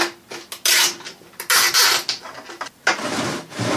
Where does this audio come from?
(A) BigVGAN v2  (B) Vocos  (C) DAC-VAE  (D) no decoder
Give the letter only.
D